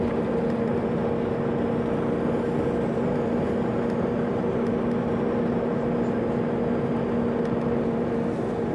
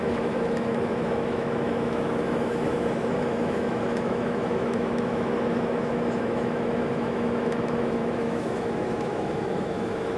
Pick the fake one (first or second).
second